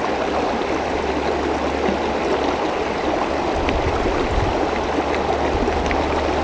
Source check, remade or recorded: recorded